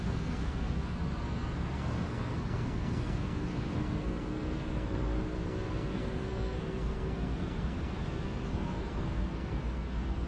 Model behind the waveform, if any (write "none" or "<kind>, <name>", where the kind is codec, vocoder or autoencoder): codec, SNAC